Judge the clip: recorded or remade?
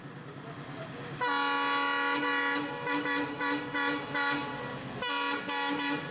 recorded